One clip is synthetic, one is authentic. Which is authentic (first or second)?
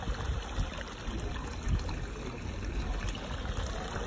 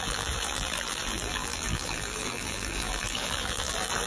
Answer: first